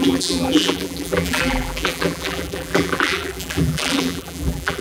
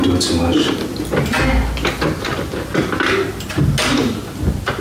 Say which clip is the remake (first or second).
first